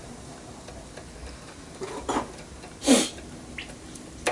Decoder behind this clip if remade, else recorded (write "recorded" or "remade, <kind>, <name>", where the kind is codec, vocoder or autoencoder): recorded